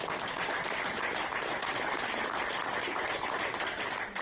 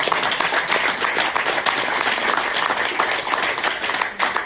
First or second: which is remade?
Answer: first